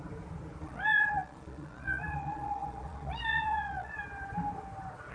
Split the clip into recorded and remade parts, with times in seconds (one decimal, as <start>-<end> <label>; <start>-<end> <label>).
0.0-0.6 recorded; 0.6-4.0 remade; 4.0-5.1 recorded